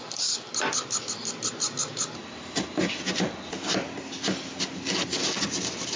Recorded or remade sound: recorded